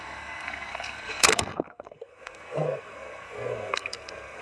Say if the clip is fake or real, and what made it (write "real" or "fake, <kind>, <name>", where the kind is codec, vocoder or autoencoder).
fake, codec, SNAC